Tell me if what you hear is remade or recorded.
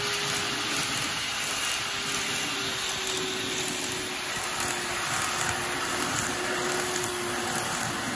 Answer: recorded